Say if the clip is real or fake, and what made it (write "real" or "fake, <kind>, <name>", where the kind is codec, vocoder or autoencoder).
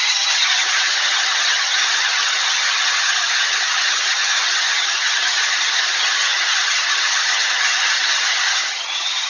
fake, vocoder, HiFi-GAN